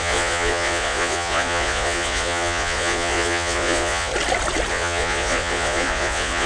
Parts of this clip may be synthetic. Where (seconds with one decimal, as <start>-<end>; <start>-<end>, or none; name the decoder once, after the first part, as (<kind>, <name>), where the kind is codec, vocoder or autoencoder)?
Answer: 0.0-4.1 (vocoder, Vocos); 4.7-6.5